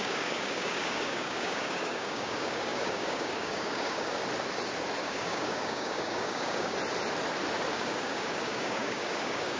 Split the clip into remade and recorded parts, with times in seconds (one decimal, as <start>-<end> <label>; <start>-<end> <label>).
0.0-4.2 remade; 4.2-5.0 recorded; 5.0-6.7 remade; 6.7-7.7 recorded; 7.7-9.6 remade